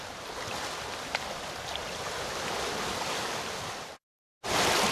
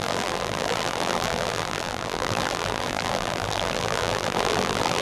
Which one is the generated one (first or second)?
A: second